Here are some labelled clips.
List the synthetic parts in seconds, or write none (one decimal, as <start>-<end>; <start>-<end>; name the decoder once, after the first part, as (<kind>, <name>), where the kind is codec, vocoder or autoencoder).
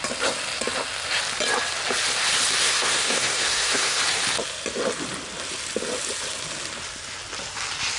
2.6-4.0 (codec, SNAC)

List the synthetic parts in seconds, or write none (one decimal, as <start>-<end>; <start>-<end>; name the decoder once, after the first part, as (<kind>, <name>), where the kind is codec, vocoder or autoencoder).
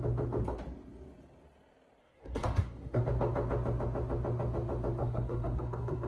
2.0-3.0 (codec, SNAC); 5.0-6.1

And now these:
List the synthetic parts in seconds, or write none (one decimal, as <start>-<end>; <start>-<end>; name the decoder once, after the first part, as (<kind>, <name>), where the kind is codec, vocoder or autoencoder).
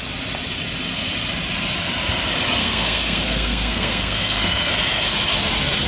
2.6-4.7 (codec, SNAC)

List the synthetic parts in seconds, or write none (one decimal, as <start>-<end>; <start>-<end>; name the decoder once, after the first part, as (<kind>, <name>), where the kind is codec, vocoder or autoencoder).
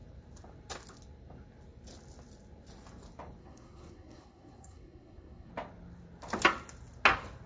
3.4-5.5 (codec, SNAC)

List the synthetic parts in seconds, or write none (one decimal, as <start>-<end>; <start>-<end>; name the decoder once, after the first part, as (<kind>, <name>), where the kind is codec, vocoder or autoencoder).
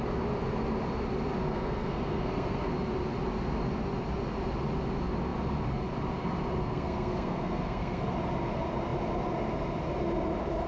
1.4-2.7 (codec, SNAC); 6.6-8.1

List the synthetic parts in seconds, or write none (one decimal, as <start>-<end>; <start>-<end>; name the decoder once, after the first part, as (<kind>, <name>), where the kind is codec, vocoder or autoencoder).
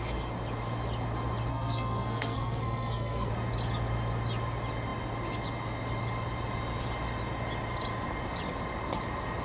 1.5-3.3 (codec, SNAC)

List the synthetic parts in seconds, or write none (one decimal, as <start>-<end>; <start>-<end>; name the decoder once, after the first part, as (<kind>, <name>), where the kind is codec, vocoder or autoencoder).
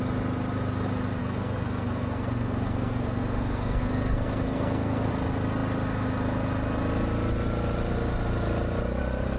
1.2-5.1 (codec, SNAC)